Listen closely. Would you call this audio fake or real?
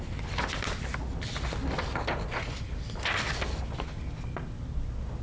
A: real